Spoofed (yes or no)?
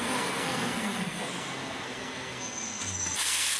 yes